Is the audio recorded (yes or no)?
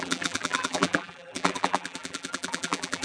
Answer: no